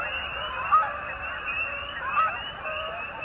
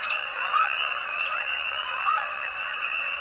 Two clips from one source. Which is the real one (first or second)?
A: first